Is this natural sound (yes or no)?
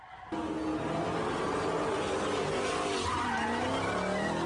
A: yes